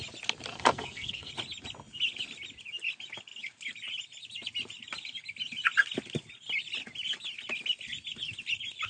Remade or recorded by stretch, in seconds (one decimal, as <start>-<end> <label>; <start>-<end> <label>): 0.0-0.5 recorded; 0.5-1.3 remade; 1.3-8.9 recorded